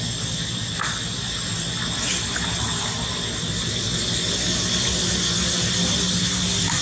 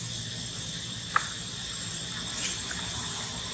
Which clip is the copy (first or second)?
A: second